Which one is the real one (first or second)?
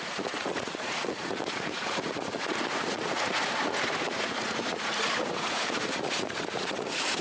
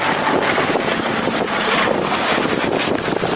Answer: second